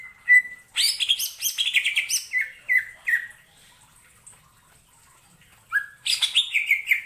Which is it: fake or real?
real